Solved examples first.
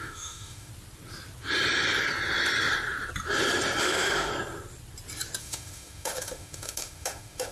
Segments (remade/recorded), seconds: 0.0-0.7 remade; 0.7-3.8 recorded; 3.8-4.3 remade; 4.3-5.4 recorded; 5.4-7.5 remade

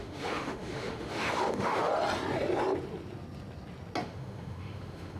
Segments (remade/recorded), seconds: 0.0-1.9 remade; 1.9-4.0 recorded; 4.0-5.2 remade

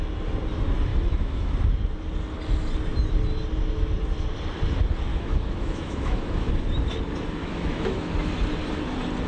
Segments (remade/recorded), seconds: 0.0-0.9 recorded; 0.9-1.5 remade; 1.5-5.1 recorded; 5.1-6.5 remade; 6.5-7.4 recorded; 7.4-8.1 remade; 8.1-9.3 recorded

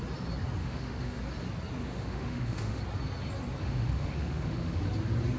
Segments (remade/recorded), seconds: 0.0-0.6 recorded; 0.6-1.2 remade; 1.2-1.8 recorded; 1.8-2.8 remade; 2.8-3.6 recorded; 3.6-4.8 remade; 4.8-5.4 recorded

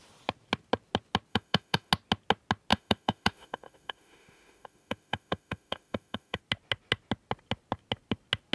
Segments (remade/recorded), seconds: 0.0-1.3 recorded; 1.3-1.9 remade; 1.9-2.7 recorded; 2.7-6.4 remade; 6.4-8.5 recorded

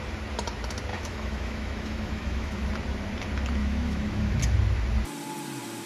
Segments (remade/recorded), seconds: 0.0-0.9 recorded; 0.9-2.7 remade; 2.7-3.6 recorded; 3.6-4.4 remade; 4.4-5.9 recorded

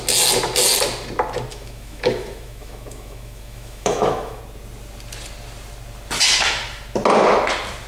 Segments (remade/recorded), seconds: 0.0-1.5 recorded; 1.5-4.4 remade; 4.4-7.9 recorded